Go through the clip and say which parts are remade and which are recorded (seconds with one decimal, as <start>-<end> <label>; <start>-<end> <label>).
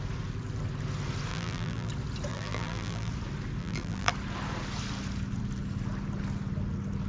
0.0-1.3 recorded; 1.3-1.9 remade; 1.9-2.3 recorded; 2.3-3.1 remade; 3.1-3.6 recorded; 3.6-4.1 remade; 4.1-7.1 recorded